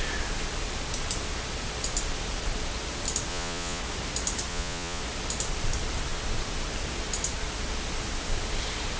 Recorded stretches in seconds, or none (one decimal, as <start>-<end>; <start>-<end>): 0.0-3.3; 3.8-4.5; 5.0-9.0